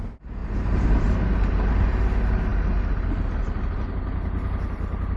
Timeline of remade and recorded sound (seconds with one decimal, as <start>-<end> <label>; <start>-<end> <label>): 0.0-5.2 recorded